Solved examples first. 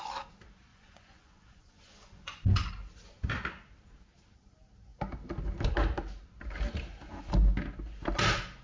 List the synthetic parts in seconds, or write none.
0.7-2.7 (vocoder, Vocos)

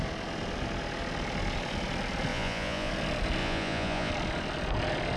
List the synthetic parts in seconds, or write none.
2.3-2.9 (vocoder, Vocos); 3.4-4.1

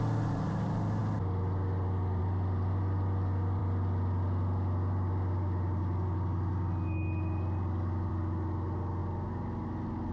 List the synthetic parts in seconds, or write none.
none

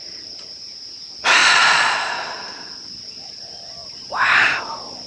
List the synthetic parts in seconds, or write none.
1.4-2.1 (vocoder, Vocos)

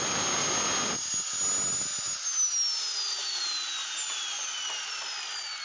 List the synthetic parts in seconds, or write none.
none